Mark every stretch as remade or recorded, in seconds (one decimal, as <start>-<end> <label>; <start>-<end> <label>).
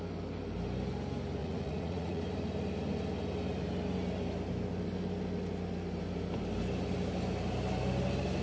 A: 0.0-1.4 recorded; 1.4-2.2 remade; 2.2-8.4 recorded